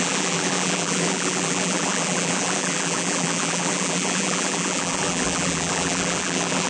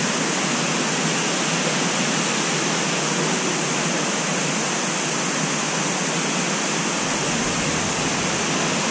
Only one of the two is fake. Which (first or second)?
first